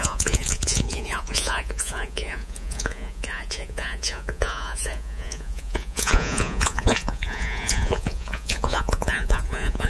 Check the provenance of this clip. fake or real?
fake